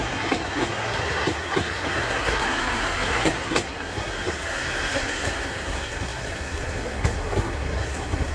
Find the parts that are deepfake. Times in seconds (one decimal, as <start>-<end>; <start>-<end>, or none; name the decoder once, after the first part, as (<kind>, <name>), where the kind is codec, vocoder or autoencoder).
0.0-8.3 (codec, SNAC)